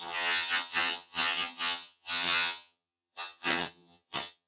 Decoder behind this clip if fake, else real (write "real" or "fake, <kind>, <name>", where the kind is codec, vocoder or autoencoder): fake, vocoder, HiFi-GAN